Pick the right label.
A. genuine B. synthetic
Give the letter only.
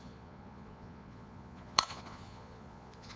B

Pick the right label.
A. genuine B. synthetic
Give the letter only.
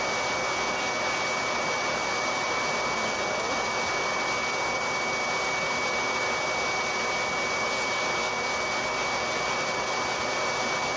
A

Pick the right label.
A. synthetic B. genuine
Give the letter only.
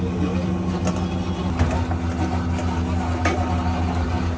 B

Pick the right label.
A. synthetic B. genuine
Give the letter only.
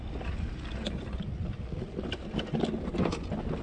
B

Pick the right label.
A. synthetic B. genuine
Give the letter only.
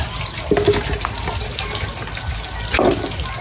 B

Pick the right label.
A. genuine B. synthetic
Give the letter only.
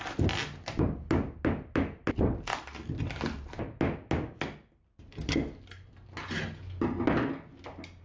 A